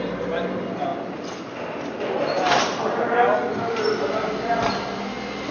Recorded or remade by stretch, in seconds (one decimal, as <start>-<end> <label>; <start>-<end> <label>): 0.0-5.5 recorded